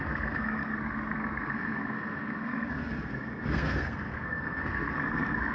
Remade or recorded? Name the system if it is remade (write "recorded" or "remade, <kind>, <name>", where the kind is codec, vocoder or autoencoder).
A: remade, codec, SNAC